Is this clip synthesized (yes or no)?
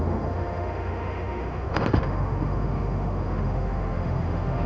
yes